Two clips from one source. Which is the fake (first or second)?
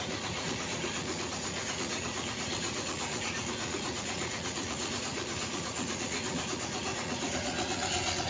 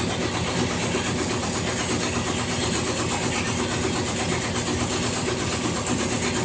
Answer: first